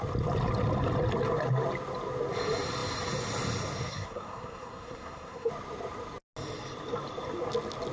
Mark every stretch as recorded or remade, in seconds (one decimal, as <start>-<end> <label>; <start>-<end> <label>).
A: 0.0-3.9 recorded; 3.9-5.5 remade; 5.5-7.9 recorded